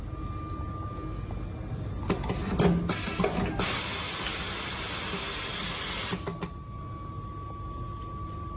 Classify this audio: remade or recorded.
recorded